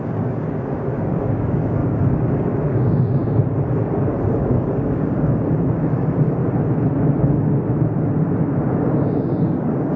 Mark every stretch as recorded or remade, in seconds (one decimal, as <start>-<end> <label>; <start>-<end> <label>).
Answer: 0.0-3.2 remade; 3.2-4.4 recorded; 4.4-6.4 remade; 6.4-9.4 recorded; 9.4-10.0 remade